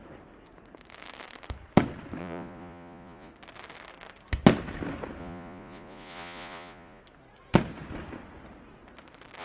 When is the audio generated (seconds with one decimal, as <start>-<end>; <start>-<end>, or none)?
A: 2.2-3.3; 5.2-7.0